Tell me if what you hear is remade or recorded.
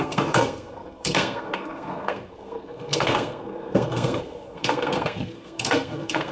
remade